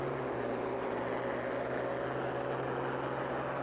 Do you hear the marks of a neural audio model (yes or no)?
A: no